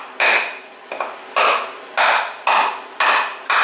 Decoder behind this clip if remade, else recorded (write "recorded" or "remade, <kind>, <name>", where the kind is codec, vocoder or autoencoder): recorded